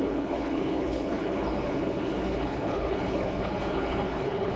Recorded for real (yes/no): no